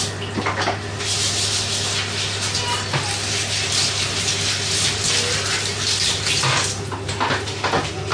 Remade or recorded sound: recorded